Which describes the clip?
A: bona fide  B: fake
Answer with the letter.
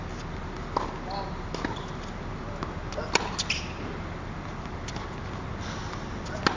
A